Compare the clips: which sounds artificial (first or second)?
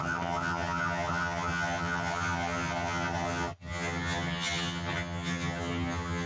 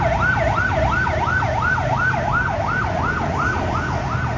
first